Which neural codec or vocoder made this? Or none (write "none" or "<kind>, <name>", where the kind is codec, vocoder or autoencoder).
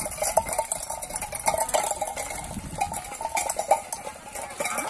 none